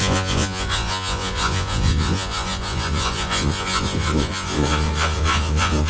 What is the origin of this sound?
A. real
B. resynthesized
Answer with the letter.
B